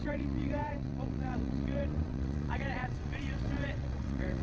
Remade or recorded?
remade